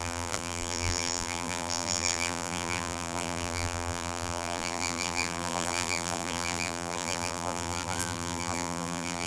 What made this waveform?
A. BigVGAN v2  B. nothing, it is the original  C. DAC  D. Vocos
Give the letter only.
A